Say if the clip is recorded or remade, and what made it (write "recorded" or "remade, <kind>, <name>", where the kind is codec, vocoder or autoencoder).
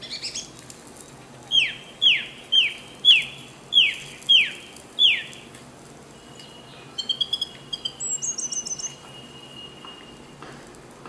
recorded